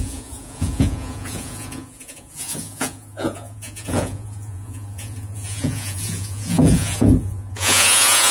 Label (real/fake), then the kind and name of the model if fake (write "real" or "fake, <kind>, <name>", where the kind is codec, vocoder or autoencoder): fake, vocoder, Vocos